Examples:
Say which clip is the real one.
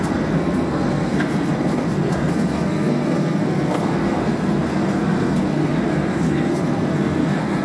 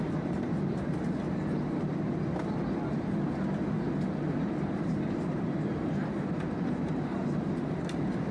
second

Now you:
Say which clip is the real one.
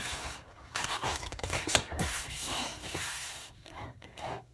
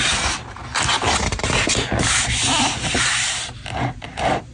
second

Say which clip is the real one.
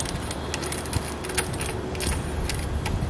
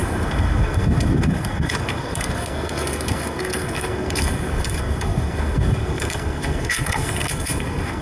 first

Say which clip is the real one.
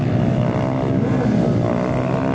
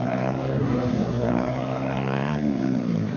first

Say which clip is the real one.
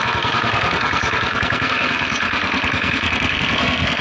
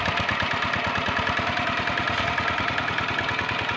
second